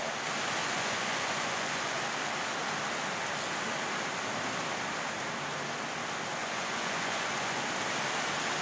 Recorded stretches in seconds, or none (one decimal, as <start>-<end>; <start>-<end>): 0.0-0.6; 2.0-6.4; 7.6-8.6